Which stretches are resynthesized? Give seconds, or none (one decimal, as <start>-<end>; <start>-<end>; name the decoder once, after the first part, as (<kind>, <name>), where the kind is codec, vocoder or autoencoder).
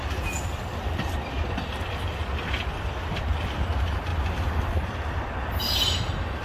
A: none